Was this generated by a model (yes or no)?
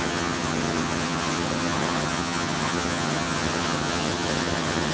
yes